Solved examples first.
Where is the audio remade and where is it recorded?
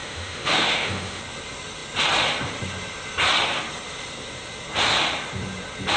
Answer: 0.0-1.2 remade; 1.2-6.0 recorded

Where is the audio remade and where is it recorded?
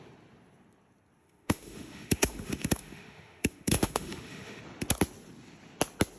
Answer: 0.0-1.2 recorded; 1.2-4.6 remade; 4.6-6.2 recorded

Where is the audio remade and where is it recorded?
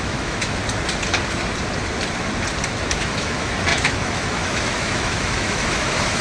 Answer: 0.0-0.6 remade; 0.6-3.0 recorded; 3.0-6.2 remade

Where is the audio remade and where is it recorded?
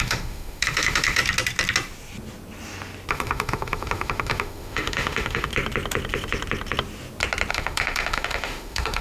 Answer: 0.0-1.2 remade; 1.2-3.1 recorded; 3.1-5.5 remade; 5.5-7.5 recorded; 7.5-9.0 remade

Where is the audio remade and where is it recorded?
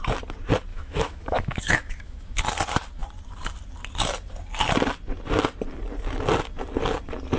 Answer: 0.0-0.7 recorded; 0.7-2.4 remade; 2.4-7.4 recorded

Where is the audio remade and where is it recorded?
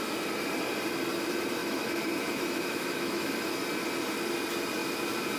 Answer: 0.0-1.6 recorded; 1.6-3.3 remade; 3.3-5.4 recorded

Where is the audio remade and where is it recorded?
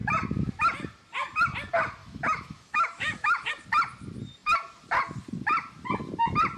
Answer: 0.0-2.0 recorded; 2.0-3.5 remade; 3.5-6.6 recorded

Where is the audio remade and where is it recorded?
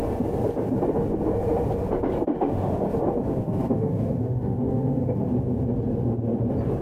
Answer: 0.0-2.3 recorded; 2.3-2.8 remade; 2.8-3.2 recorded; 3.2-5.3 remade; 5.3-6.8 recorded